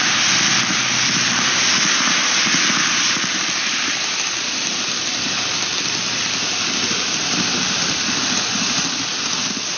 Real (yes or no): no